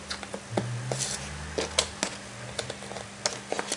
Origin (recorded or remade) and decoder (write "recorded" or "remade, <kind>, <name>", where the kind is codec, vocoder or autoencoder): recorded